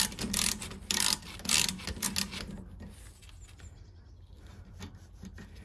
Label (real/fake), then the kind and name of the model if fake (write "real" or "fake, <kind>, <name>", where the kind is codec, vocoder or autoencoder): real